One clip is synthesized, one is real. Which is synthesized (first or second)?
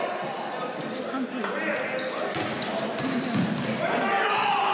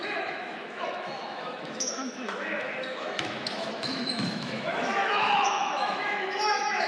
second